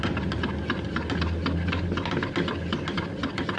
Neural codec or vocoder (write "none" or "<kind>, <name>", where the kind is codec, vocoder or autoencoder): none